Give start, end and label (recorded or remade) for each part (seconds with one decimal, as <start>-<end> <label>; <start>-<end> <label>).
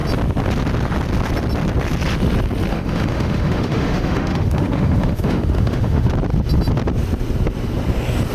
0.0-2.7 recorded; 2.7-6.1 remade; 6.1-8.3 recorded